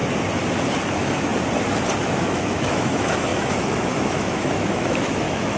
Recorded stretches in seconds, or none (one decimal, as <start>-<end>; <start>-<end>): 0.0-0.9; 1.3-2.0

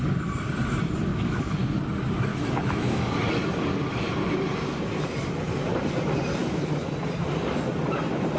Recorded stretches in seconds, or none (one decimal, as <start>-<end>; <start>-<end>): 0.0-1.1; 1.7-2.3; 3.1-6.4; 6.9-8.4

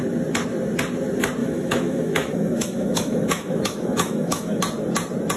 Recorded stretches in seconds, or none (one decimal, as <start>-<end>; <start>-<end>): 0.0-1.4; 4.6-5.4

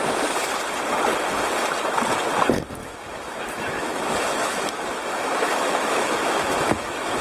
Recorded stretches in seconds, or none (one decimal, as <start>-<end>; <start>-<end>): 0.0-2.8